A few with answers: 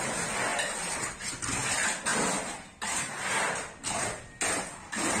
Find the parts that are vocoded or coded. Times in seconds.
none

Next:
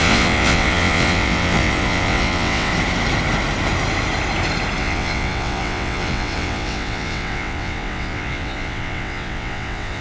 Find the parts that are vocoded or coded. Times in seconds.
0.0-2.7; 4.8-10.0

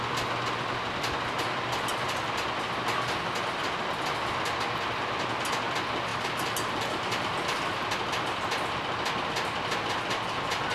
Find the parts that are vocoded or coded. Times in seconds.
none

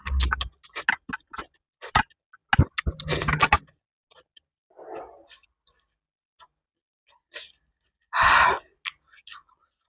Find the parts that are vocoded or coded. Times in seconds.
none

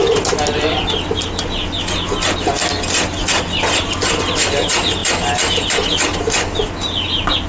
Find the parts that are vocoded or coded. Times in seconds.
none

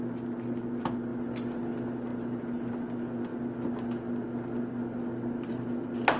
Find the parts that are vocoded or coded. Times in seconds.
none